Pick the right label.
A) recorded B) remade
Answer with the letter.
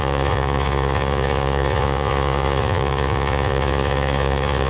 B